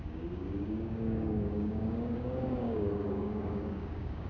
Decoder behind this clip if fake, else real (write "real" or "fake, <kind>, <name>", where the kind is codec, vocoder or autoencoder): fake, codec, DAC